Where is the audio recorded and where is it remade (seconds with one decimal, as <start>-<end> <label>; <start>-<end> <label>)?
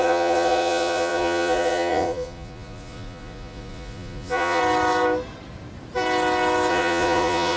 0.0-4.6 remade; 4.6-6.7 recorded; 6.7-7.6 remade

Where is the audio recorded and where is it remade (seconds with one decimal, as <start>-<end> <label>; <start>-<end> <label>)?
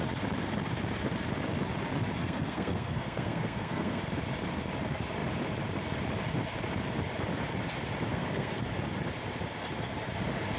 0.0-2.2 recorded; 2.2-4.0 remade; 4.0-8.1 recorded; 8.1-8.6 remade; 8.6-10.6 recorded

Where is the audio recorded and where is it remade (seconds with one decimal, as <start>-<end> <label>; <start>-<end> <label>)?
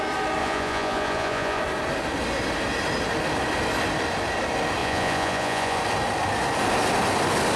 0.0-0.4 recorded; 0.4-1.6 remade; 1.6-4.8 recorded; 4.8-5.8 remade; 5.8-7.6 recorded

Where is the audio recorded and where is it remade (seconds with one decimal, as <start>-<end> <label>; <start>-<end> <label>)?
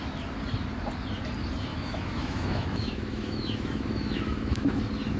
0.0-1.7 recorded; 1.7-4.8 remade; 4.8-5.2 recorded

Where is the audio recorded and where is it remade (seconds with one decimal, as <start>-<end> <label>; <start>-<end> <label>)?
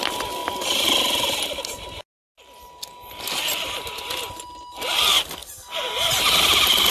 0.0-6.9 recorded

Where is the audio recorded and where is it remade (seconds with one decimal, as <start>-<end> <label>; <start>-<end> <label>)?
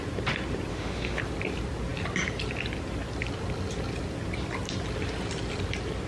0.0-0.7 recorded; 0.7-1.2 remade; 1.2-6.1 recorded